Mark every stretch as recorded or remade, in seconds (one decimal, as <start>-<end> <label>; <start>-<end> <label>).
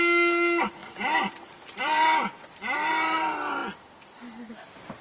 0.0-3.6 remade; 3.6-4.5 recorded; 4.5-5.0 remade